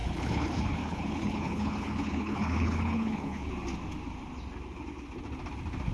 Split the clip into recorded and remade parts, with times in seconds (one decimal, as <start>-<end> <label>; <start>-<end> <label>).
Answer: 0.0-3.5 remade; 3.5-5.9 recorded